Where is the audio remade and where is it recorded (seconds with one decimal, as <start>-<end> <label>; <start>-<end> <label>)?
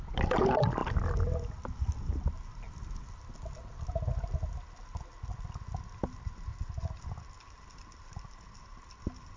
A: 0.0-6.5 recorded; 6.5-7.2 remade; 7.2-7.8 recorded; 7.8-9.4 remade